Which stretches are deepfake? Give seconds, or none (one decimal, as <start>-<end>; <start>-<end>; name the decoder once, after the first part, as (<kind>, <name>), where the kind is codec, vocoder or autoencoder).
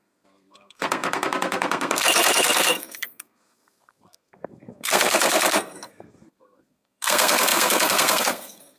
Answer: 0.0-8.8 (codec, SNAC)